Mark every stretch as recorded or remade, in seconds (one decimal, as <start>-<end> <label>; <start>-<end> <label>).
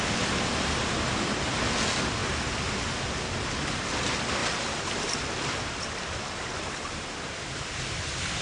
0.0-8.4 recorded